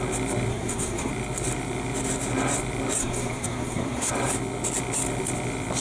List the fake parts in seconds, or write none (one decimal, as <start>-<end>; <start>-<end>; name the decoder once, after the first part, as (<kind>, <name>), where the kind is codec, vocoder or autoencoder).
0.5-1.1 (codec, SNAC); 3.0-4.1

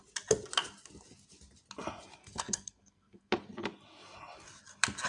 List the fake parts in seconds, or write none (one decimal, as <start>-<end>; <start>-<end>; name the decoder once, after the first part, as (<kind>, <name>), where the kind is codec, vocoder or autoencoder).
2.2-3.3 (codec, SNAC)

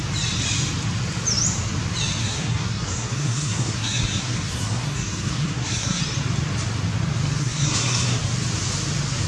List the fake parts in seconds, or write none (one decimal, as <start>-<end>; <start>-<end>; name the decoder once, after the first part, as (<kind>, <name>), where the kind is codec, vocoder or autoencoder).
2.2-6.0 (codec, SNAC); 7.4-8.2

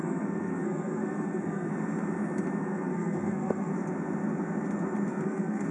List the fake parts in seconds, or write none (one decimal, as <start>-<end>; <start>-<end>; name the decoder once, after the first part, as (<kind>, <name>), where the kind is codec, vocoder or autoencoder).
0.0-1.7 (codec, SNAC); 2.6-3.7; 5.1-5.7